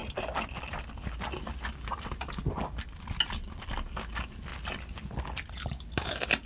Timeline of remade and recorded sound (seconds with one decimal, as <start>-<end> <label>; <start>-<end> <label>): 0.0-6.5 recorded